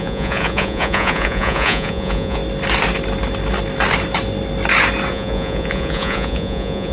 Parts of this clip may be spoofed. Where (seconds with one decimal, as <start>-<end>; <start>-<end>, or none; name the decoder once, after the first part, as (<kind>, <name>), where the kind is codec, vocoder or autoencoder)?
0.0-2.4 (vocoder, Vocos); 5.1-6.9